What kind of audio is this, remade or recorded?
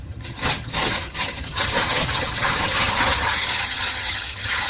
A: remade